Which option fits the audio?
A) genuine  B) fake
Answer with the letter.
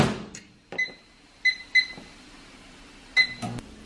A